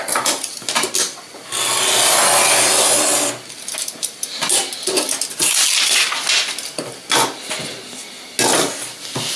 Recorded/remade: recorded